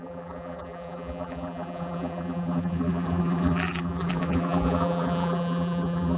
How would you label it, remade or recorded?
remade